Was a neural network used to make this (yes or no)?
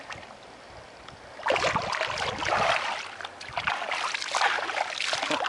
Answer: no